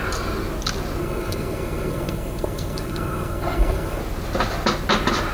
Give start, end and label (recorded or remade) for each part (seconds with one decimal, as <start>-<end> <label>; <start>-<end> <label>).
0.0-1.0 recorded; 1.0-4.0 remade; 4.0-5.3 recorded